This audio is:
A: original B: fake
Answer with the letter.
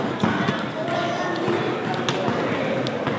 A